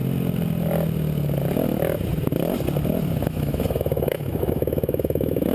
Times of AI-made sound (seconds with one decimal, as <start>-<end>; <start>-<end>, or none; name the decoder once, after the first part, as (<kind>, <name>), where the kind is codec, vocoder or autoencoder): 3.3-5.5 (autoencoder, DAC-VAE)